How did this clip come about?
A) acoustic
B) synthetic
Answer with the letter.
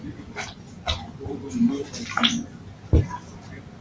A